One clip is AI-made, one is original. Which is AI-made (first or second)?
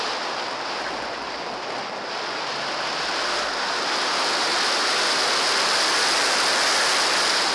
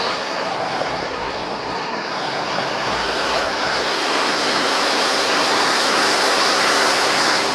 second